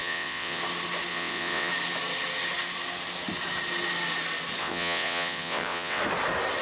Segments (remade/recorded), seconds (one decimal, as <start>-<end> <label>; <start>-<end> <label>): 0.0-0.6 remade; 0.6-1.1 recorded; 1.1-1.7 remade; 1.7-4.6 recorded; 4.6-6.0 remade; 6.0-6.6 recorded

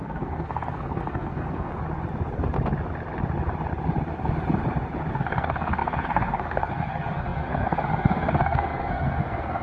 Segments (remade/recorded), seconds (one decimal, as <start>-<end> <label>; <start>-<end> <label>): 0.0-1.7 remade; 1.7-5.1 recorded; 5.1-9.6 remade

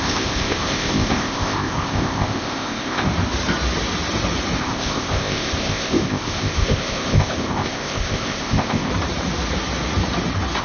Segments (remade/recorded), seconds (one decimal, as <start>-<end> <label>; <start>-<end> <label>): 0.0-3.1 remade; 3.1-4.6 recorded; 4.6-8.9 remade; 8.9-10.6 recorded

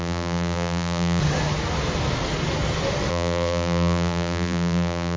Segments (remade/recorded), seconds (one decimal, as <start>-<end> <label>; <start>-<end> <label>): 0.0-1.2 remade; 1.2-3.1 recorded; 3.1-5.2 remade

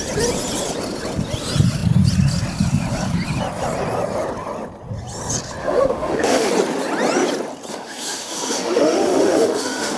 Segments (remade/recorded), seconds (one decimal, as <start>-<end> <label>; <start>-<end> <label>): 0.0-5.6 recorded; 5.6-6.5 remade; 6.5-7.7 recorded; 7.7-10.0 remade

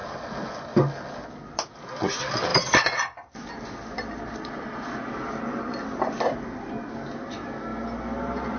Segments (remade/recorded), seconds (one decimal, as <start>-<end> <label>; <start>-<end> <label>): 0.0-8.6 recorded

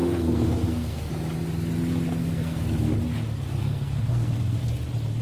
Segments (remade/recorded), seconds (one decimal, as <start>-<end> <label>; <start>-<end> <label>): 0.0-1.1 remade; 1.1-2.2 recorded; 2.2-3.0 remade; 3.0-3.6 recorded; 3.6-4.6 remade; 4.6-5.2 recorded